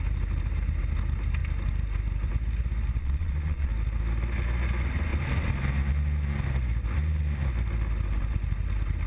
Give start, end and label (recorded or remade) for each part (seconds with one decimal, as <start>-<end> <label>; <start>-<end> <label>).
0.0-3.0 recorded; 3.0-3.7 remade; 3.7-9.1 recorded